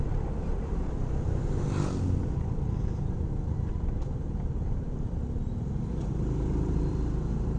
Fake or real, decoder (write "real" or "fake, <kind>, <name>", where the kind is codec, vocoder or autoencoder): real